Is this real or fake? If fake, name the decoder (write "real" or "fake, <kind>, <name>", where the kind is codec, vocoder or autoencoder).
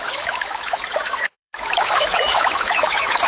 fake, autoencoder, DAC-VAE